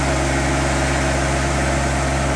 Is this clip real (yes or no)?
yes